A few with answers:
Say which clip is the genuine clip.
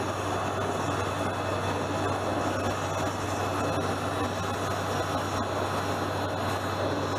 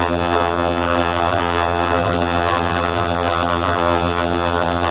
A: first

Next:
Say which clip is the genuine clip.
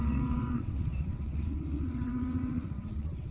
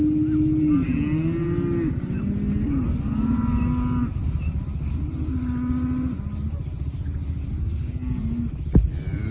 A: second